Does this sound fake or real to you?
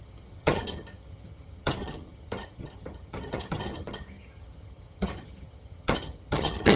fake